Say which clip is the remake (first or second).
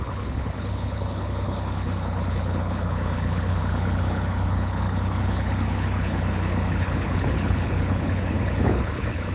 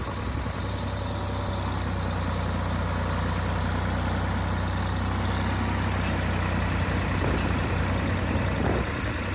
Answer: first